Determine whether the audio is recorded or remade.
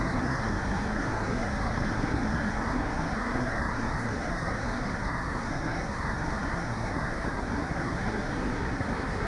remade